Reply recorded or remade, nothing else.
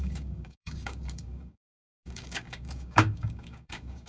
remade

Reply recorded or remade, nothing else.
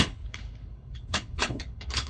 remade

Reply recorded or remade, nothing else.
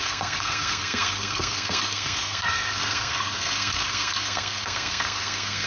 remade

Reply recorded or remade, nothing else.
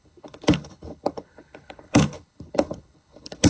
remade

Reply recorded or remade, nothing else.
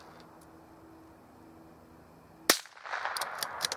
recorded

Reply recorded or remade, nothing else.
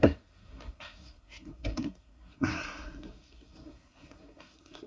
remade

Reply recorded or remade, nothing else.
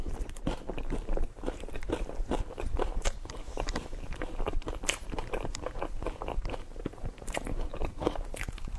remade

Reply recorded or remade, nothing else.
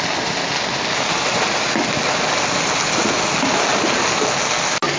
recorded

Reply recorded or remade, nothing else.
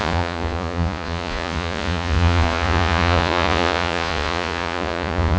remade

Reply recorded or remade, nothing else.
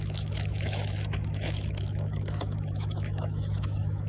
remade